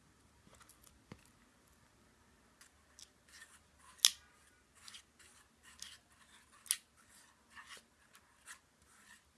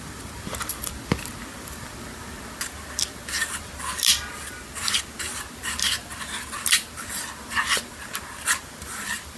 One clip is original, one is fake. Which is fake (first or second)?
second